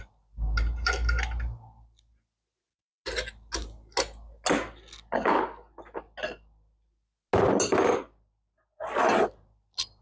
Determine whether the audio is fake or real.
real